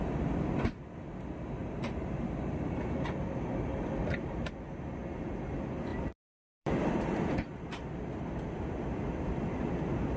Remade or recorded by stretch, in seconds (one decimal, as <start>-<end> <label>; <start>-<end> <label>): 0.0-1.6 recorded; 1.6-2.3 remade; 2.3-4.0 recorded; 4.0-4.5 remade; 4.5-5.9 recorded; 5.9-7.2 remade; 7.2-10.2 recorded